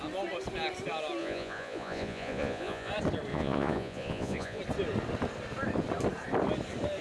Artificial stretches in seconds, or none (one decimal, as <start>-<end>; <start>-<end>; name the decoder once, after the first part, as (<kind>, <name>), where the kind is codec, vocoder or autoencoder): 1.2-2.9 (vocoder, Vocos); 3.3-4.6